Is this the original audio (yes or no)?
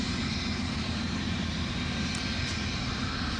yes